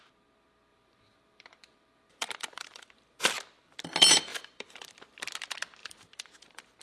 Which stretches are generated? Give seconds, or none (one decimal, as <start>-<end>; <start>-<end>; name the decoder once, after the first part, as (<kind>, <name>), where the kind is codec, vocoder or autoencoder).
0.7-3.3 (vocoder, BigVGAN v2); 4.3-4.9; 5.8-6.8